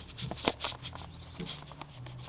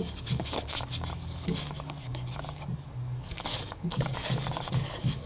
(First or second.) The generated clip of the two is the second